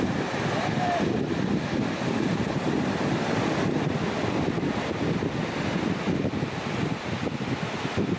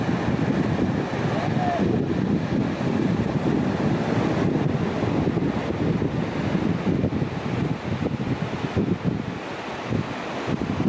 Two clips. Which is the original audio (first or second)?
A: second